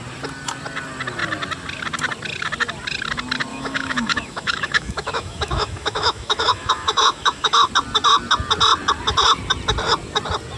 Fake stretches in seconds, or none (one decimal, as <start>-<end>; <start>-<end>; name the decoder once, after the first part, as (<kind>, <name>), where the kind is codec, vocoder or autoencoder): 3.5-7.7 (autoencoder, DAC-VAE)